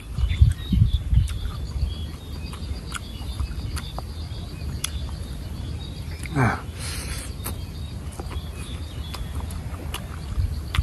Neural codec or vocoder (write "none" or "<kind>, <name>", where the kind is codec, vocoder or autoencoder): none